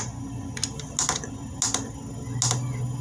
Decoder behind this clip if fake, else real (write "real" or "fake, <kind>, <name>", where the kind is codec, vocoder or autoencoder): real